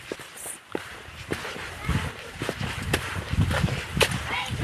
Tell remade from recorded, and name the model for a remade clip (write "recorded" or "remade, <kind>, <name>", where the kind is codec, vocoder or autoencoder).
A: recorded